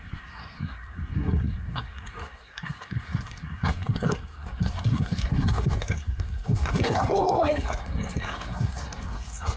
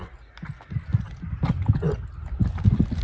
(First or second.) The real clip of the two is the second